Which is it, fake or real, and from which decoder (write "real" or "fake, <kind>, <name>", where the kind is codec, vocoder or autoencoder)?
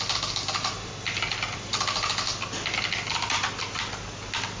real